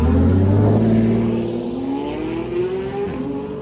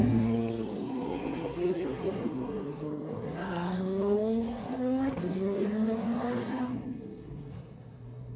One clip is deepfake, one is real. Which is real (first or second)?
first